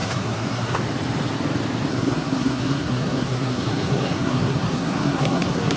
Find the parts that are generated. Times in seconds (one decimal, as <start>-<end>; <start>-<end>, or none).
0.0-0.8; 1.9-5.8